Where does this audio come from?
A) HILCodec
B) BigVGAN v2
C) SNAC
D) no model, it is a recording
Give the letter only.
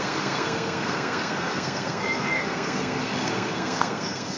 C